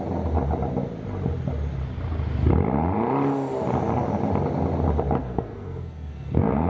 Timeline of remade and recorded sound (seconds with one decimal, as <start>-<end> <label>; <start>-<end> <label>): 0.0-5.2 recorded; 5.2-6.7 remade